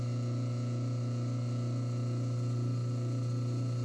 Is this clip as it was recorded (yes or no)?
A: yes